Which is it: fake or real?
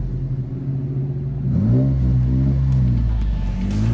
real